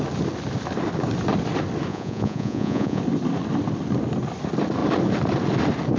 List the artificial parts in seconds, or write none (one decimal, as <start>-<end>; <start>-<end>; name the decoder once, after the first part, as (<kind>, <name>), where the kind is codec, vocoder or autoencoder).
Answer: 1.9-3.0 (vocoder, Vocos)